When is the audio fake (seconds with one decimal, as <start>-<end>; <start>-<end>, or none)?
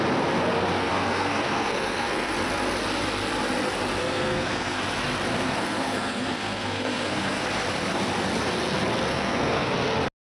0.8-2.3; 4.0-4.8; 5.3-7.4; 9.1-9.7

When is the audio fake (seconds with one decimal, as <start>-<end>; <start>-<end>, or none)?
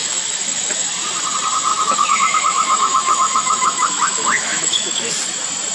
0.0-0.9; 1.7-5.1